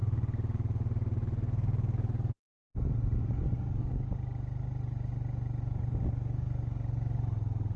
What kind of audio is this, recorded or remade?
recorded